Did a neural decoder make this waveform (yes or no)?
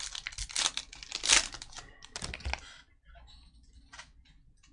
no